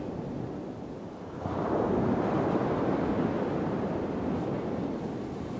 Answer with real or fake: real